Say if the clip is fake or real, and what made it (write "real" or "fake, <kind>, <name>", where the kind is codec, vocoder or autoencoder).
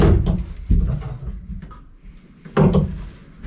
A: real